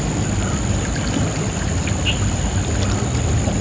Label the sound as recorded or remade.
recorded